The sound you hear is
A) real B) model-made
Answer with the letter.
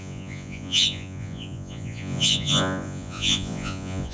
B